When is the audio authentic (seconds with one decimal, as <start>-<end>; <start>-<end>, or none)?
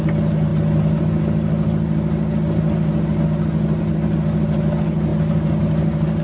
0.0-6.2